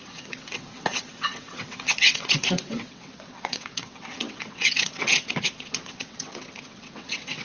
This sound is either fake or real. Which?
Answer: fake